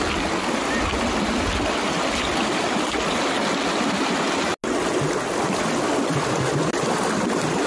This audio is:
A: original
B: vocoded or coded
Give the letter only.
A